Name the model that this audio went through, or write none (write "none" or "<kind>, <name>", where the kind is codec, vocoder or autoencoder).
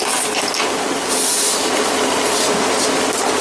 none